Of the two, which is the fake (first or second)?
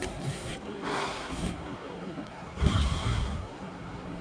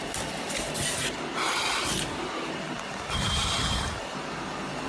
first